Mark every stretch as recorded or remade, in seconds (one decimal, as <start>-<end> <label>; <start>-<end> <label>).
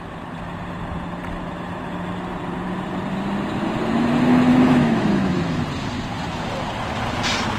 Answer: 0.0-4.5 recorded; 4.5-5.6 remade; 5.6-7.6 recorded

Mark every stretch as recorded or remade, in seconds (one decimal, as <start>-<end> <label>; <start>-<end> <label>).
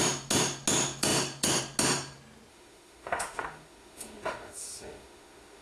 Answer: 0.0-2.5 recorded; 2.5-5.6 remade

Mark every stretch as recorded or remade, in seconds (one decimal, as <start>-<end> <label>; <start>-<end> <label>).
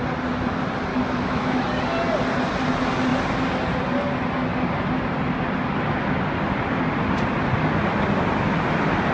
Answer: 0.0-0.9 recorded; 0.9-1.6 remade; 1.6-9.1 recorded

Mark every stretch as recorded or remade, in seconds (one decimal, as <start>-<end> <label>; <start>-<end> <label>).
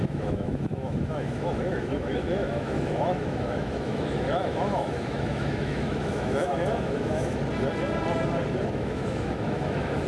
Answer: 0.0-7.4 remade; 7.4-8.7 recorded; 8.7-10.1 remade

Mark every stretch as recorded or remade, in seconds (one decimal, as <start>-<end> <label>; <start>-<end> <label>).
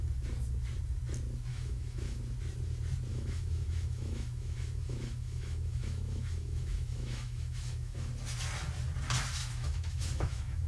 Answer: 0.0-1.5 recorded; 1.5-2.2 remade; 2.2-3.1 recorded; 3.1-8.1 remade; 8.1-9.4 recorded; 9.4-10.7 remade